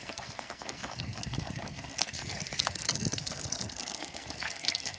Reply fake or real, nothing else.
fake